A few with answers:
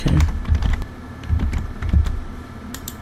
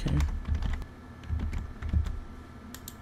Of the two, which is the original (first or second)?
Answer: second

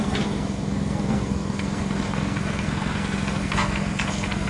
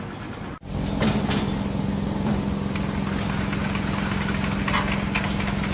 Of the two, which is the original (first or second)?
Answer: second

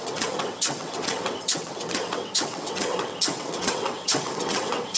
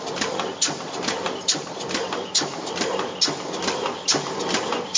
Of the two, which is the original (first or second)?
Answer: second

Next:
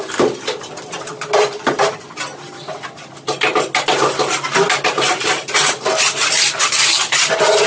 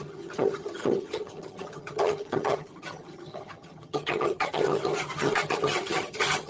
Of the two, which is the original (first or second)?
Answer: first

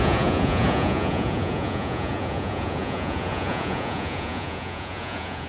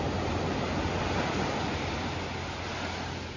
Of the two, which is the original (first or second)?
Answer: second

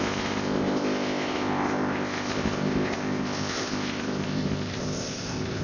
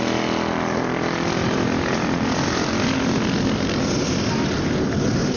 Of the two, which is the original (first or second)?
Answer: second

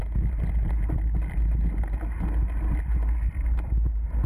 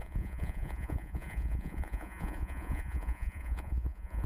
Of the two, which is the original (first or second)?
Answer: first